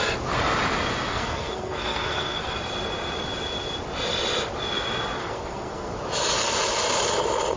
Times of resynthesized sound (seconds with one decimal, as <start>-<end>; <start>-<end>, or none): 1.1-2.6; 5.2-6.0

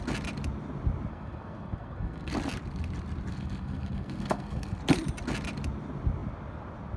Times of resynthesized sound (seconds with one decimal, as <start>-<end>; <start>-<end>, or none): 1.1-2.3; 3.3-4.8

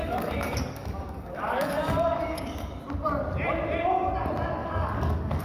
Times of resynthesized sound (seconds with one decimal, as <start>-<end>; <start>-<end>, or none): 0.0-2.8; 4.6-5.4